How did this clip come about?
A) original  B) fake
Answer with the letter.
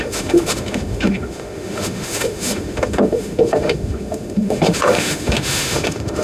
B